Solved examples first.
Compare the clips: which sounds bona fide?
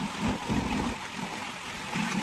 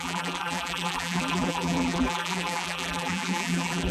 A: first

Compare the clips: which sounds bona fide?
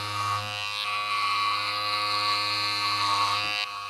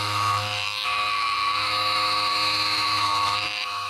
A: first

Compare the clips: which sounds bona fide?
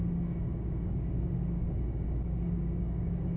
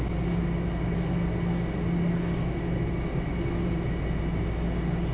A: second